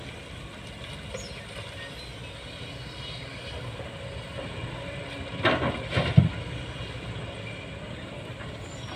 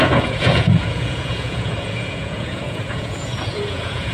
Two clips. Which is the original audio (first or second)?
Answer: first